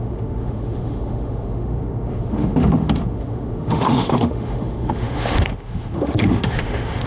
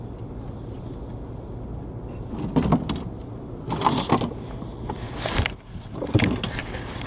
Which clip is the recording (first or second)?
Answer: second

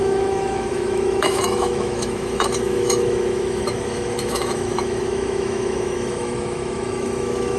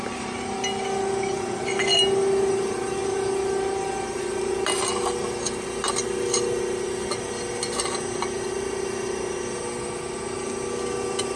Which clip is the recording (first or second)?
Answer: second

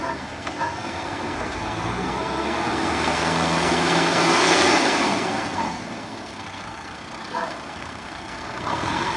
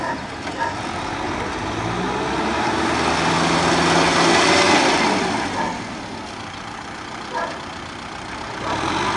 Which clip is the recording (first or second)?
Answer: second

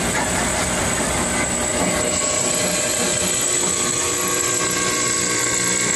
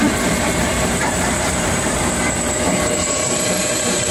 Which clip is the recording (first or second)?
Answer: first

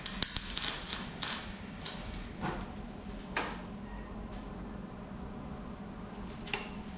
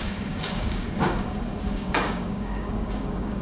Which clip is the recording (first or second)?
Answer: first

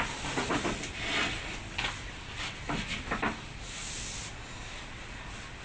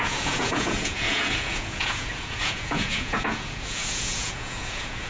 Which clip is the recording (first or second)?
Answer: first